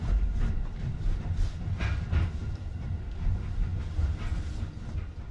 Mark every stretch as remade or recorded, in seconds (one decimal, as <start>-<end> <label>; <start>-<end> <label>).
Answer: 0.0-5.3 recorded